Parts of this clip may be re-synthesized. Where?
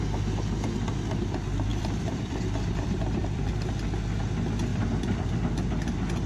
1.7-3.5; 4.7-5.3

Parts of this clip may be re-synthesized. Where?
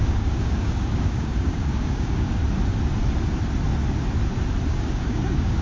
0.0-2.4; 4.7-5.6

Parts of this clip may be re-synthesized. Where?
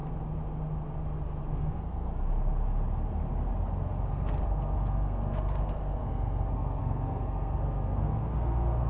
1.5-2.1; 4.1-8.9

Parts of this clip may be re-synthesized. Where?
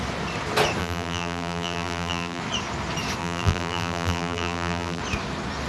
0.8-2.4; 3.2-5.0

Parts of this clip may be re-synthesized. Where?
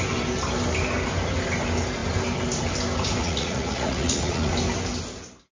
3.2-4.5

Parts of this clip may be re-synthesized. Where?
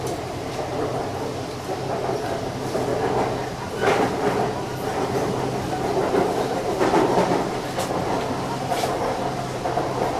none